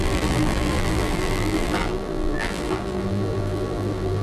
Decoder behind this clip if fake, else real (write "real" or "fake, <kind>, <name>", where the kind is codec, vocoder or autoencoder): fake, vocoder, BigVGAN v2